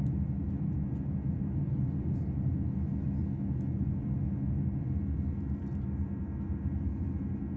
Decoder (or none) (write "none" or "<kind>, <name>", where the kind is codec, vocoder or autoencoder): none